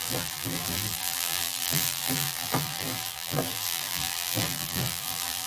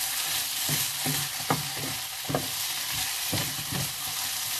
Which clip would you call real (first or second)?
second